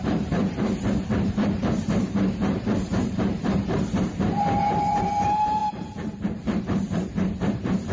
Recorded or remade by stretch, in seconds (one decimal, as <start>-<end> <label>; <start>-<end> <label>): 0.0-7.9 remade

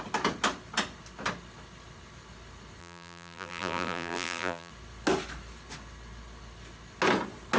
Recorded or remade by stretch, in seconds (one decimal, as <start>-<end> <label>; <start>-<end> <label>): 0.0-2.8 recorded; 2.8-4.7 remade; 4.7-7.6 recorded

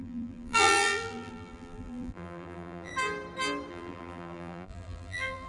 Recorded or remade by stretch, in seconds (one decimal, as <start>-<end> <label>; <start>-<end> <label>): 0.0-2.9 remade; 2.9-3.7 recorded; 3.7-5.5 remade